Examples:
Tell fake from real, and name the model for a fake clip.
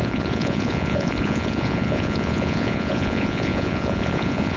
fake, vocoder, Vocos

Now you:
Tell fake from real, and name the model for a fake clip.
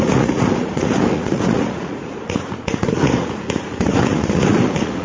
fake, vocoder, Vocos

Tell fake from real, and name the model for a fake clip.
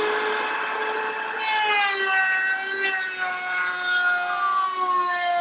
real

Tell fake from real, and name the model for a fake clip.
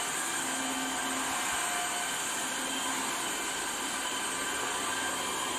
real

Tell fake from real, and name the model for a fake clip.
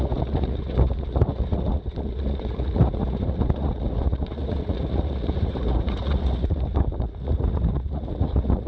fake, vocoder, Vocos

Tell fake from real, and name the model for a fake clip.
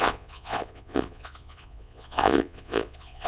fake, vocoder, Vocos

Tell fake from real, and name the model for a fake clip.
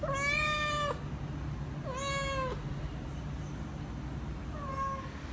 real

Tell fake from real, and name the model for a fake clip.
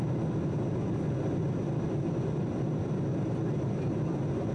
real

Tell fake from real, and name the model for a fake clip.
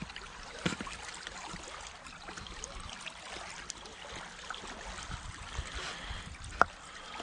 real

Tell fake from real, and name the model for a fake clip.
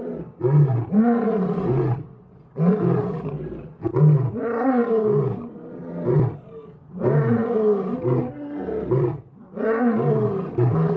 real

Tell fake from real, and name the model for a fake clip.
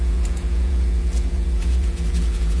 fake, vocoder, Vocos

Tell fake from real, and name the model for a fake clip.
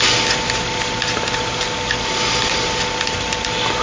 real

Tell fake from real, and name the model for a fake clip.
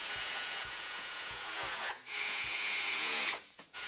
fake, vocoder, Vocos